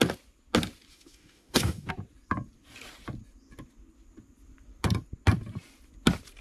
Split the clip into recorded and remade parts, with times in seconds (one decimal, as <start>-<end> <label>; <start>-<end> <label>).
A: 0.0-0.9 recorded; 0.9-1.9 remade; 1.9-6.4 recorded